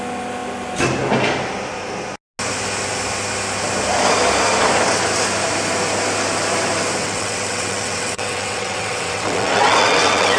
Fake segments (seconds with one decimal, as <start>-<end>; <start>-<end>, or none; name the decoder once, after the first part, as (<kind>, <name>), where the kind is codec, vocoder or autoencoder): 7.0-10.4 (vocoder, WaveNeXt)

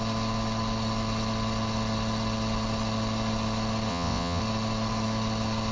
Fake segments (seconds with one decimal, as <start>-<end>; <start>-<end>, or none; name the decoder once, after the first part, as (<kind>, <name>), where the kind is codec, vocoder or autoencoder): 3.9-4.4 (vocoder, WaveNeXt)

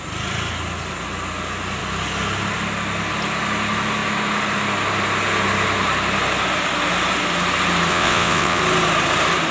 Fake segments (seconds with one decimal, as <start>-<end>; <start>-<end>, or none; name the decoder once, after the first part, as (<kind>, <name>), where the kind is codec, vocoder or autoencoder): 7.9-8.6 (vocoder, WaveNeXt)

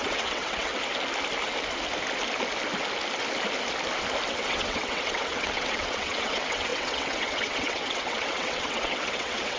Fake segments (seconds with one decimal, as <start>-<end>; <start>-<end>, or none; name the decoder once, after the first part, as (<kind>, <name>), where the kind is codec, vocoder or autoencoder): 0.0-0.7 (vocoder, WaveNeXt); 4.3-9.6

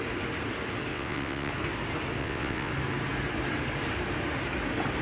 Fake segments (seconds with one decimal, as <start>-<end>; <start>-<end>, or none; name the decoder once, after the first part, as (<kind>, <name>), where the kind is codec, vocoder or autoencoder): 0.9-1.5 (vocoder, WaveNeXt); 2.2-2.7

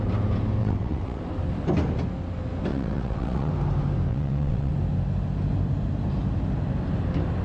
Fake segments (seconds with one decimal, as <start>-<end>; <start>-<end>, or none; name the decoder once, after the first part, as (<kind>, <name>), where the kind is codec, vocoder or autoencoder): 0.6-1.2 (vocoder, WaveNeXt); 2.7-3.5; 4.1-4.7

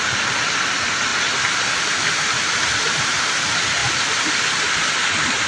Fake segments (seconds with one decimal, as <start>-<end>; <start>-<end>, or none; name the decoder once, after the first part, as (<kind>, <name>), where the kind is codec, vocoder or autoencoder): none

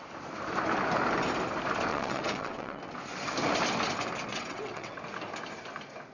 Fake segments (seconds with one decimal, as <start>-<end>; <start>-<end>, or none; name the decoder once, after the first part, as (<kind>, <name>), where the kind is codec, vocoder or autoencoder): 1.9-2.8 (vocoder, WaveNeXt); 4.3-5.0